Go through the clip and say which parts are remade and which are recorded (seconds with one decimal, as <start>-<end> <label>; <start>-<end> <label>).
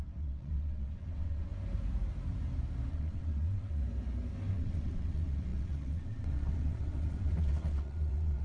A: 0.0-1.5 remade; 1.5-2.9 recorded; 2.9-3.8 remade; 3.8-4.5 recorded; 4.5-8.4 remade